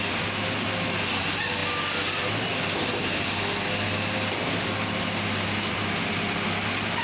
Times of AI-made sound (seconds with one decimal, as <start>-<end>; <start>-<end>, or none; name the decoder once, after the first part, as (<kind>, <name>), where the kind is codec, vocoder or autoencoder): none